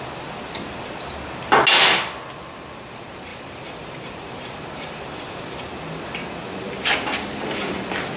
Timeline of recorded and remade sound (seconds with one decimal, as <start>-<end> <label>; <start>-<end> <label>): 0.0-3.3 recorded; 3.3-5.6 remade; 5.6-8.2 recorded